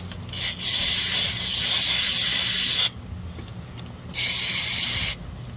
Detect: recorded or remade recorded